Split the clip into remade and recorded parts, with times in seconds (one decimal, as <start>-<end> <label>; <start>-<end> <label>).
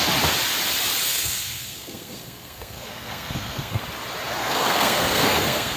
0.0-1.1 recorded; 1.1-3.8 remade; 3.8-4.4 recorded; 4.4-5.8 remade